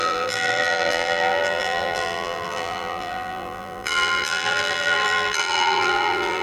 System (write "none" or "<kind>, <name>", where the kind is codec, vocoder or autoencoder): vocoder, BigVGAN v2